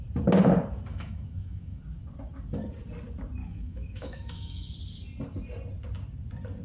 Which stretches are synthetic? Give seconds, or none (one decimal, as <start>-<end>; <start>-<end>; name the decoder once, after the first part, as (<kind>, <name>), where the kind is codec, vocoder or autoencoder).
0.9-1.8 (autoencoder, DAC-VAE); 3.4-4.7